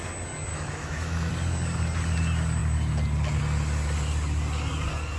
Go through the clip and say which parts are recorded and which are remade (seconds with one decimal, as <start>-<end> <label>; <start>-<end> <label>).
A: 0.0-0.5 recorded; 0.5-1.3 remade; 1.3-5.2 recorded